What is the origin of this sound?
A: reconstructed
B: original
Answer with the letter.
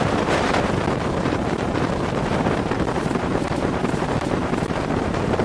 A